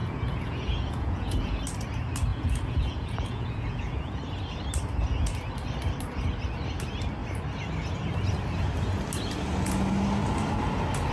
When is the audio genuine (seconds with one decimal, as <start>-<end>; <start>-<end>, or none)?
1.6-2.3; 4.2-11.1